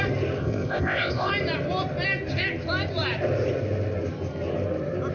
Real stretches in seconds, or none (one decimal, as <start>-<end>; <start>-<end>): 0.0-0.4; 1.3-5.1